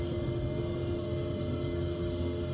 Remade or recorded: remade